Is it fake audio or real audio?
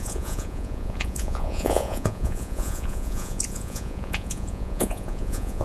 fake